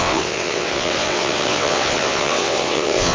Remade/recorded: remade